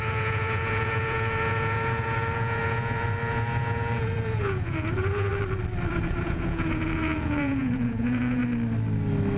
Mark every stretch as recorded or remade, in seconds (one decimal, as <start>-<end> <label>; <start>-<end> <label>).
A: 0.0-5.3 remade; 5.3-5.9 recorded; 5.9-8.4 remade; 8.4-9.4 recorded